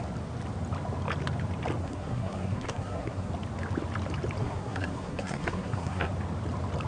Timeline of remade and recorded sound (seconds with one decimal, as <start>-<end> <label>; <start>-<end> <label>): 0.0-1.8 recorded; 1.8-3.3 remade; 3.3-4.4 recorded; 4.4-6.1 remade; 6.1-6.9 recorded